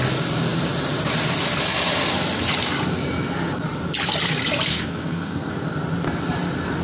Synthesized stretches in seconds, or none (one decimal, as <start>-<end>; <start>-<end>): 4.7-5.5